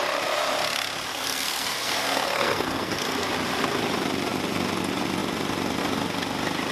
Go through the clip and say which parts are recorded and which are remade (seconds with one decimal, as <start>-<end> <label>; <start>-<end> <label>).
0.0-1.1 recorded; 1.1-3.3 remade; 3.3-6.7 recorded

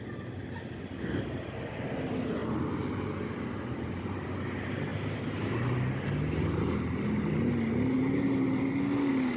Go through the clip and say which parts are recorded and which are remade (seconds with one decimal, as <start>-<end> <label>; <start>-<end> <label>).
0.0-9.4 recorded

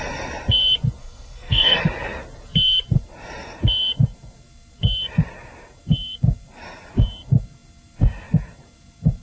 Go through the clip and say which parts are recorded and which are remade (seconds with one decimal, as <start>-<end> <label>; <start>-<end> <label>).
0.0-1.0 recorded; 1.0-1.8 remade; 1.8-9.2 recorded

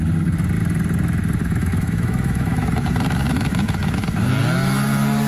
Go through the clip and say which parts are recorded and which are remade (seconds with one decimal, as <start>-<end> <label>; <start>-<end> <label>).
0.0-1.4 recorded; 1.4-4.3 remade; 4.3-5.3 recorded